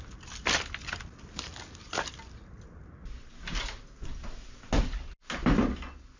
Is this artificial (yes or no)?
no